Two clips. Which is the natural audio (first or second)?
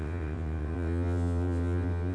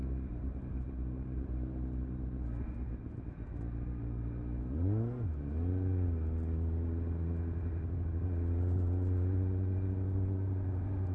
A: second